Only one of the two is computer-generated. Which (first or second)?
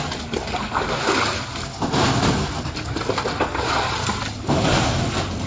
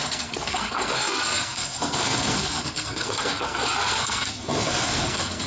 second